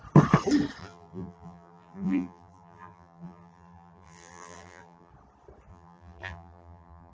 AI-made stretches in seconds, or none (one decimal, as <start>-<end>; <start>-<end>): 0.8-5.1; 5.7-7.1